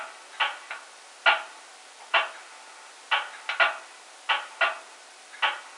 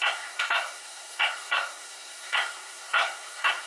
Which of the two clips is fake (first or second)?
second